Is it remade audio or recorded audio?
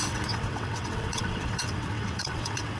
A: remade